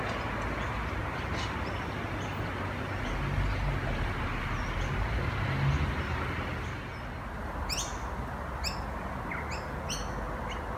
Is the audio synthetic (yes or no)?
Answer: no